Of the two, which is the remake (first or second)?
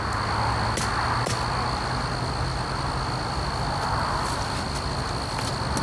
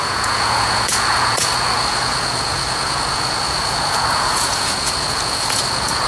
second